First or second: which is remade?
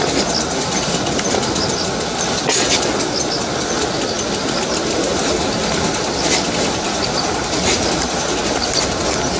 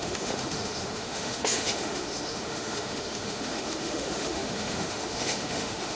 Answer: second